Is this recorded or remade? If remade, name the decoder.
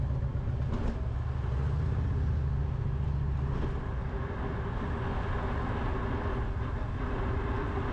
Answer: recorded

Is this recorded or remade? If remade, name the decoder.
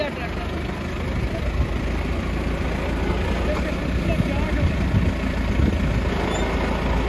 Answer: recorded